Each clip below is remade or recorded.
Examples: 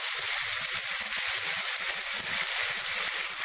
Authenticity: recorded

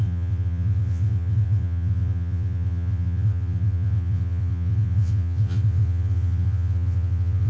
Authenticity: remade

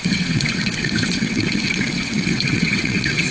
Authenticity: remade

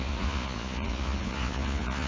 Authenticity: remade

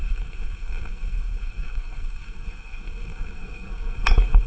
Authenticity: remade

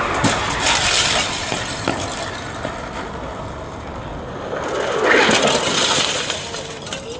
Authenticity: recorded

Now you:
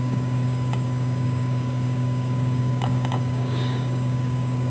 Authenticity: remade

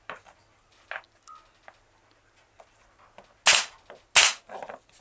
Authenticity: recorded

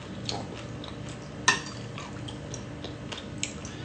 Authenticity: recorded